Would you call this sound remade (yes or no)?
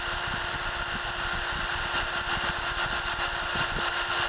no